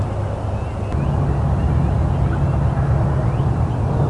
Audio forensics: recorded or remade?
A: recorded